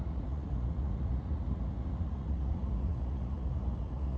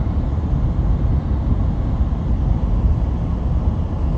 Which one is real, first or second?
second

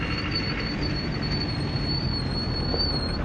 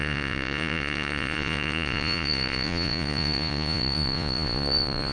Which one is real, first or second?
first